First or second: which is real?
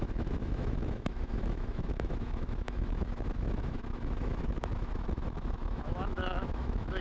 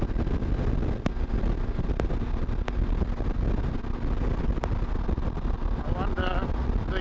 second